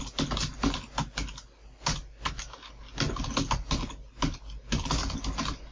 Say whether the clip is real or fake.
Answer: real